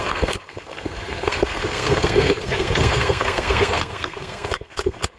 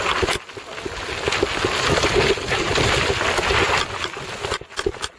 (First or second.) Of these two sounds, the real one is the second